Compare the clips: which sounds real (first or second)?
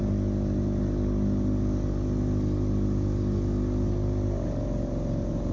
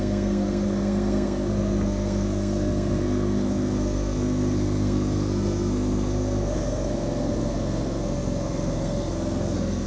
first